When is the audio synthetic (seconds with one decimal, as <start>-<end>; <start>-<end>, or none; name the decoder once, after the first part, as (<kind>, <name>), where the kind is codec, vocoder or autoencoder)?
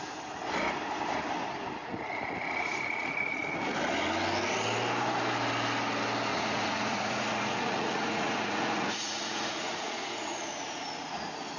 1.8-3.7 (vocoder, Vocos); 6.3-11.2